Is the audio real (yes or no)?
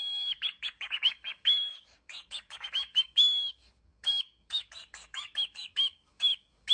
no